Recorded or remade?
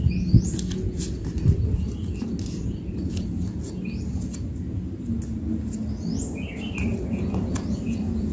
recorded